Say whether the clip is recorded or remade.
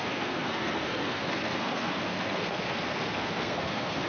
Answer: remade